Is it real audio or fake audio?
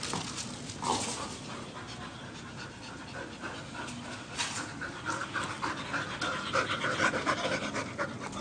real